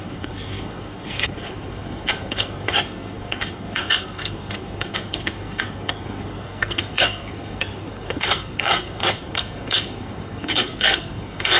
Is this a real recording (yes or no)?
no